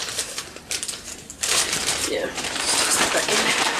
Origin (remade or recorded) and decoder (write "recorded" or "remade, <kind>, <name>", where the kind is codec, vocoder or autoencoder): remade, vocoder, BigVGAN v2